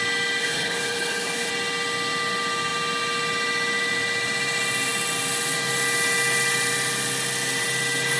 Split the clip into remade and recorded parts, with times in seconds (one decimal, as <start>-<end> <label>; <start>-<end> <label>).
0.0-0.4 recorded; 0.4-1.5 remade; 1.5-8.2 recorded